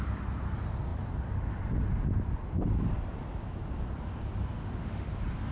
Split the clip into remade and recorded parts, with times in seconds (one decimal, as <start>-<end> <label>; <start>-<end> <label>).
0.0-4.6 recorded; 4.6-5.1 remade; 5.1-5.5 recorded